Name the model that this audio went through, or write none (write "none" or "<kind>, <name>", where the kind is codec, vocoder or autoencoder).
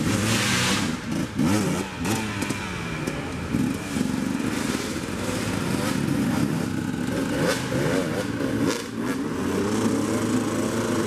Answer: none